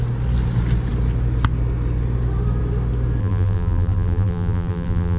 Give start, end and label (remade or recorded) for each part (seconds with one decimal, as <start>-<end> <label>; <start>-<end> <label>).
0.0-3.2 recorded; 3.2-5.2 remade